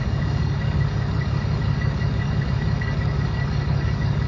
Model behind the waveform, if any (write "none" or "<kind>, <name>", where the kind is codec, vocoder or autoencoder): codec, DAC